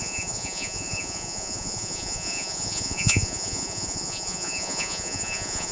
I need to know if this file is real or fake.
fake